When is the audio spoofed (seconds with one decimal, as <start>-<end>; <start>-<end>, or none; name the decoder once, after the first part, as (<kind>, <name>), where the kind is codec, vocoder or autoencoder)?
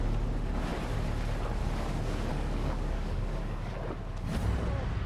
2.3-3.7 (codec, DAC)